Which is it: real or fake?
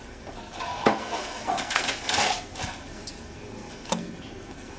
fake